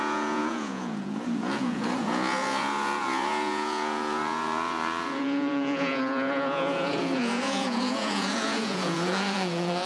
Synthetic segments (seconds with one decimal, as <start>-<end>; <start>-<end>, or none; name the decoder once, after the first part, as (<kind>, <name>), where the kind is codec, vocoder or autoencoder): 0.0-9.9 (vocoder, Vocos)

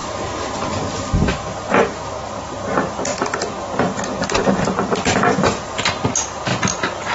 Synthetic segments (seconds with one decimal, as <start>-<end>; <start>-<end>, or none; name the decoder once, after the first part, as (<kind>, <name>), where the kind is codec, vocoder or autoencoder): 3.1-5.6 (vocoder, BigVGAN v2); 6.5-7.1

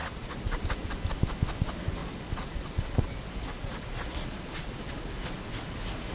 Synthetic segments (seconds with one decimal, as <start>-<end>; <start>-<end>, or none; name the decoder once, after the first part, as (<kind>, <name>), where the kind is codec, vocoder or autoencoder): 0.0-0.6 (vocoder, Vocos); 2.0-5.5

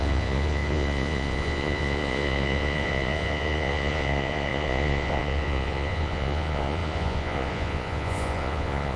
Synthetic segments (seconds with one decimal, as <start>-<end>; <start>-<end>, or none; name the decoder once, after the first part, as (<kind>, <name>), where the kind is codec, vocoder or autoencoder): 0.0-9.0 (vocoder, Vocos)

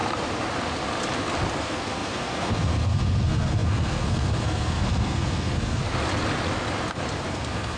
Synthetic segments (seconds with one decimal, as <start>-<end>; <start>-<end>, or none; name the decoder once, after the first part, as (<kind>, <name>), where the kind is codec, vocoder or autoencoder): 1.6-5.8 (codec, SNAC); 7.3-7.8